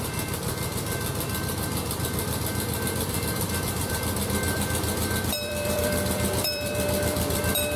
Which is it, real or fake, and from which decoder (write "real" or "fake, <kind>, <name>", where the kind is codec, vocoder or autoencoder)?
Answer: fake, vocoder, BigVGAN v2